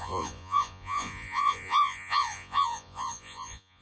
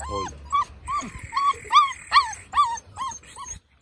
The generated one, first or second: first